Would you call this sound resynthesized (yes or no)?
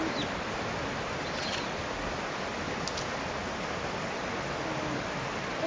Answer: no